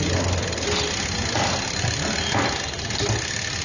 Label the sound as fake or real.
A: real